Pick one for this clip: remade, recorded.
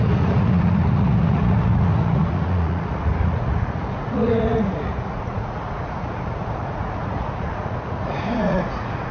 remade